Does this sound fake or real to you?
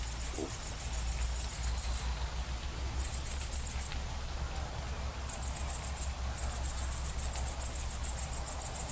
real